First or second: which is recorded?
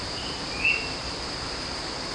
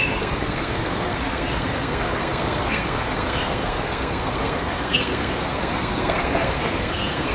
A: first